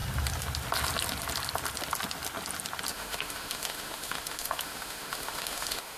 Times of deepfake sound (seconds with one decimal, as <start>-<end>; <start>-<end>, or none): 2.9-6.0